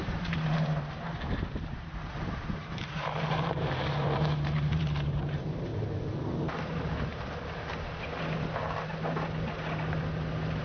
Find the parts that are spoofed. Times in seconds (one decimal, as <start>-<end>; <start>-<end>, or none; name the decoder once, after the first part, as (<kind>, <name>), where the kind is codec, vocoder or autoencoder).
0.0-5.7 (vocoder, BigVGAN v2)